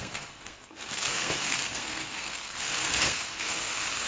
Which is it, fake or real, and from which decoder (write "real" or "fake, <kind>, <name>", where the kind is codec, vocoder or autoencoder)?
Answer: fake, codec, SNAC